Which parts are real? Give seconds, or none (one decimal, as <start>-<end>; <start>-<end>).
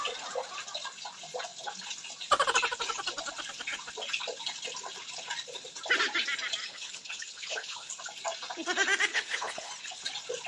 0.0-6.6; 7.9-9.1; 9.7-10.5